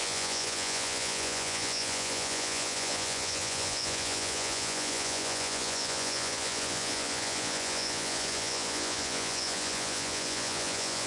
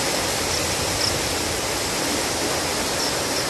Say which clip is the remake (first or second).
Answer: first